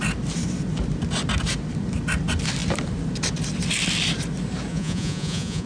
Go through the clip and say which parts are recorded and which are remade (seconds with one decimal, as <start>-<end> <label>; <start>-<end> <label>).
0.0-4.7 recorded; 4.7-5.7 remade